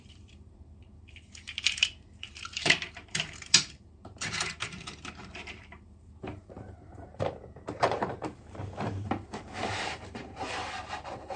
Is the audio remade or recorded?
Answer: remade